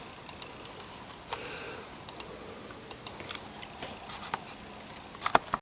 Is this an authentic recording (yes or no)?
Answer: yes